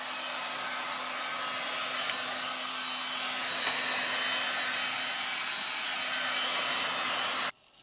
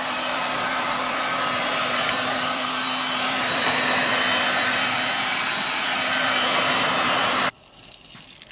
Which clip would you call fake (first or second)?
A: second